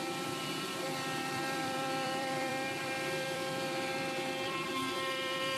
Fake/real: fake